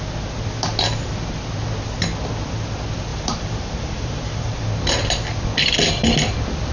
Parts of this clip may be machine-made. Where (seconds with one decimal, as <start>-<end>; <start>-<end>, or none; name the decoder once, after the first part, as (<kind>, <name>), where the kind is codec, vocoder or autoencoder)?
3.1-4.6 (vocoder, BigVGAN v2)